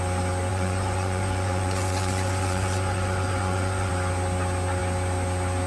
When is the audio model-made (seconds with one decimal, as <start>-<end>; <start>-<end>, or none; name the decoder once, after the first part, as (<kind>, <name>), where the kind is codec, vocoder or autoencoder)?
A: 0.5-3.9 (vocoder, Vocos)